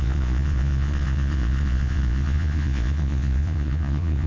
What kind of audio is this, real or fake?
fake